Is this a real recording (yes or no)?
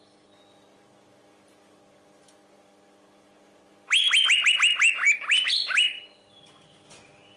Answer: yes